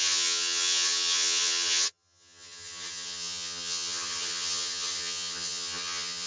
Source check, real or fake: fake